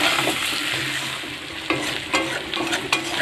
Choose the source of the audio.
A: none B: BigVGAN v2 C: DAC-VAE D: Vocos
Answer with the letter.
A